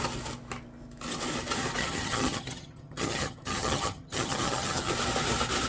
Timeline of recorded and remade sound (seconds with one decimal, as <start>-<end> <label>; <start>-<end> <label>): 0.0-1.8 recorded; 1.8-4.9 remade; 4.9-5.7 recorded